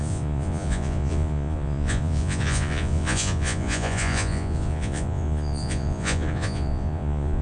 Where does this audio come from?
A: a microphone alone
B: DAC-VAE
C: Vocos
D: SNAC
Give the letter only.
C